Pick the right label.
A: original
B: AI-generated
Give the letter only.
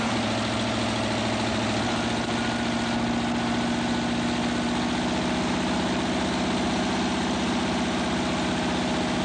A